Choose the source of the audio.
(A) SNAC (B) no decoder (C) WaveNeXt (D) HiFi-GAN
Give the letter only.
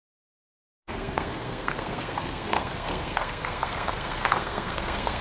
A